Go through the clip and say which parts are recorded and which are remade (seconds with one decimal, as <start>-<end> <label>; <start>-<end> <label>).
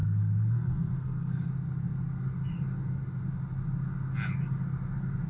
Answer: 0.0-1.5 remade; 1.5-5.3 recorded